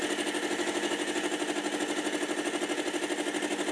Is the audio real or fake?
real